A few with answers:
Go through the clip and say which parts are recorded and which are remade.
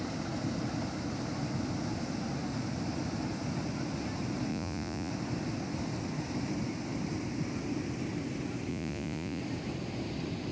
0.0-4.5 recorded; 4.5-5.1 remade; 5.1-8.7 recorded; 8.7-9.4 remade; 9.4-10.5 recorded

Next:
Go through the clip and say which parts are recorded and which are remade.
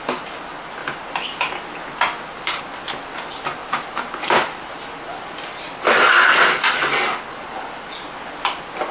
0.0-8.9 recorded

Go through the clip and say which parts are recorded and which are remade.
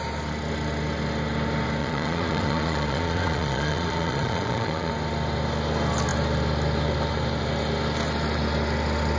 0.0-1.8 recorded; 1.8-4.9 remade; 4.9-9.2 recorded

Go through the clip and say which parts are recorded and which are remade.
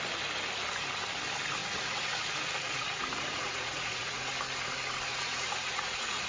0.0-1.6 recorded; 1.6-2.3 remade; 2.3-3.1 recorded; 3.1-4.3 remade; 4.3-5.1 recorded; 5.1-6.3 remade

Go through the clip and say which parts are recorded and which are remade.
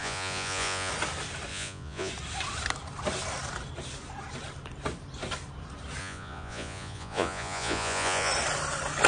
0.0-0.9 remade; 0.9-1.5 recorded; 1.5-2.1 remade; 2.1-6.0 recorded; 6.0-8.3 remade; 8.3-9.1 recorded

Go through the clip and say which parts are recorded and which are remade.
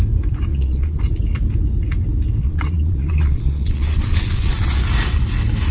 0.0-0.5 recorded; 0.5-1.0 remade; 1.0-2.4 recorded; 2.4-4.8 remade; 4.8-5.7 recorded